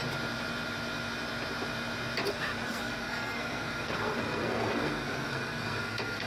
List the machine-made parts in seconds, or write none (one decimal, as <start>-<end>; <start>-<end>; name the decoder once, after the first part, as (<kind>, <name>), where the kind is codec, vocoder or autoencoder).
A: 2.3-6.3 (codec, SNAC)